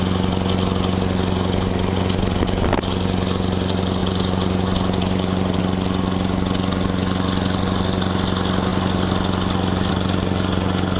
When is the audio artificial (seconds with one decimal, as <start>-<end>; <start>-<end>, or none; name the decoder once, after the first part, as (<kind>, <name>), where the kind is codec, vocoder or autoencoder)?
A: 4.0-5.6 (vocoder, BigVGAN v2)